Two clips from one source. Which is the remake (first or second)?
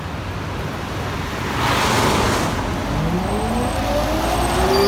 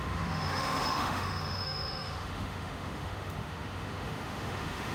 second